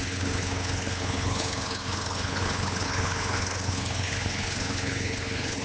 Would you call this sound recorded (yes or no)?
no